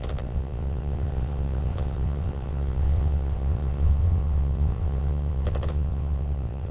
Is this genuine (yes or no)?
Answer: no